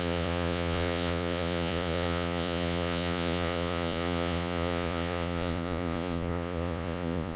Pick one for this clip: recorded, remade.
remade